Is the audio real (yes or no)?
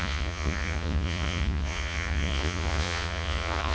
no